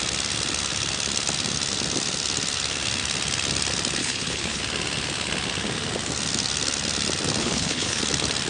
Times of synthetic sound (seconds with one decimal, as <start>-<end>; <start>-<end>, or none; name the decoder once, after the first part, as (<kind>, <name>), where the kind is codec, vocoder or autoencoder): 4.0-4.6 (codec, HILCodec); 7.4-8.0